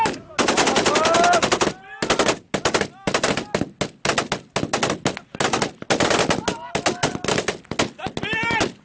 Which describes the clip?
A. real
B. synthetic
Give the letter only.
A